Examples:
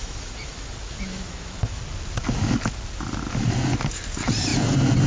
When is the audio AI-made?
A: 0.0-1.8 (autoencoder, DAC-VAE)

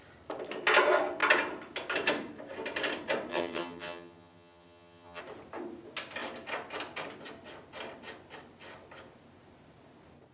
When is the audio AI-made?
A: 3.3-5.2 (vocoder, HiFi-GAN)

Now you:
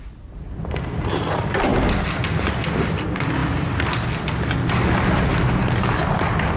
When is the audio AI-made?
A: none